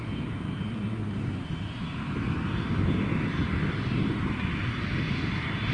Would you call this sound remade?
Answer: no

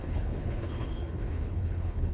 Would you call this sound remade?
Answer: yes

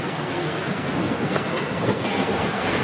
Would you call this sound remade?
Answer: yes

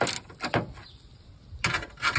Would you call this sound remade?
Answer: no